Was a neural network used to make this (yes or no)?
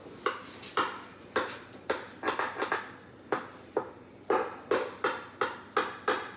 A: no